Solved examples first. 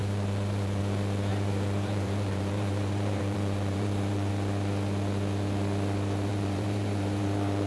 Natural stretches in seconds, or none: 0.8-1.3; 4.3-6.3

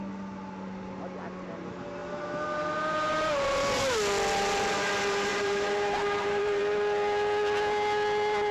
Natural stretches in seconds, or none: 0.0-5.3; 6.6-8.5